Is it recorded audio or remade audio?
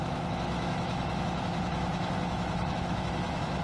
remade